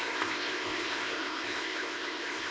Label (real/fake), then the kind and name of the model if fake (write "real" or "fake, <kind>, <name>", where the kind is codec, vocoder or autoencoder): fake, codec, ZipCodec